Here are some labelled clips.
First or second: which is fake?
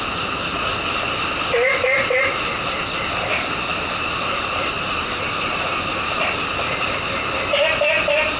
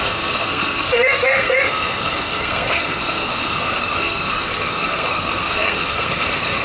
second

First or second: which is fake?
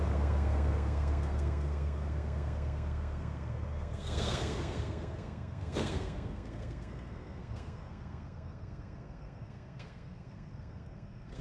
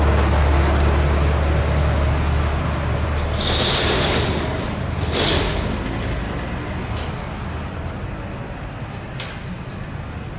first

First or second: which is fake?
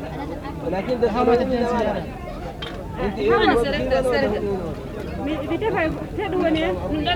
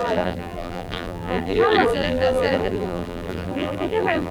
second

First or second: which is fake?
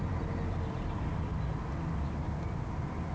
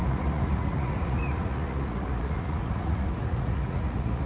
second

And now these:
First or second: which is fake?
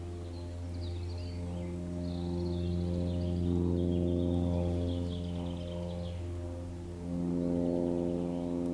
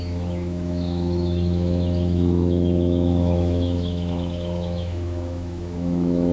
second